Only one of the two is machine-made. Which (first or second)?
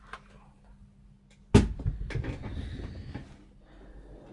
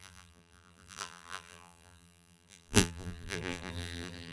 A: second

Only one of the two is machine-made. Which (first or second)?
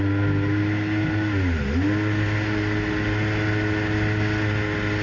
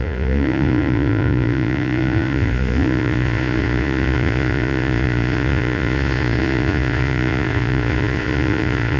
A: second